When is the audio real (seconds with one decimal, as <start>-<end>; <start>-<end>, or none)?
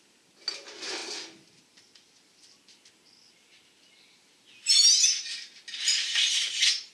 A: 0.0-6.9